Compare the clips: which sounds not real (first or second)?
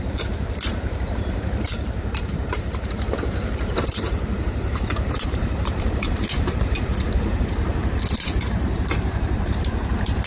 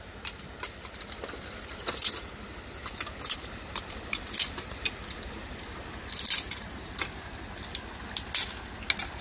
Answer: first